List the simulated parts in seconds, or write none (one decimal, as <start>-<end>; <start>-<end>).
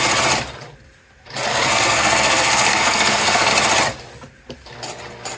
1.5-3.5